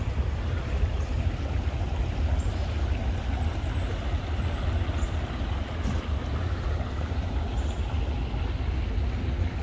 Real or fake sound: real